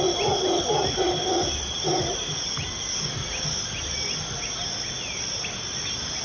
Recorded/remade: recorded